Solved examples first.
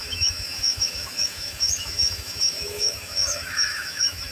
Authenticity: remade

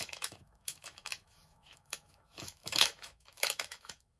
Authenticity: remade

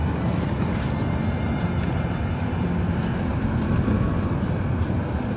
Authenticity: recorded